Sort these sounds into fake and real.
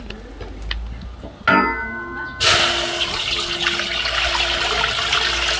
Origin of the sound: real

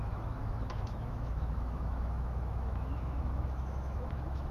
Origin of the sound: fake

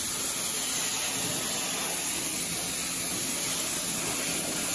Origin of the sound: real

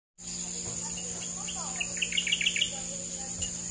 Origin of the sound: real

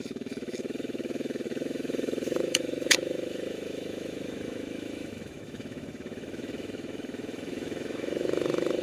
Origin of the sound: fake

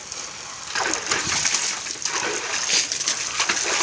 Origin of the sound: real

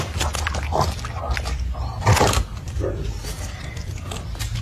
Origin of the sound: real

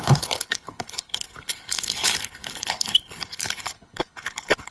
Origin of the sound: fake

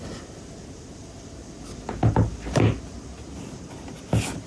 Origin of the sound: real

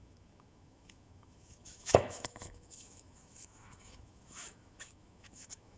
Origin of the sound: fake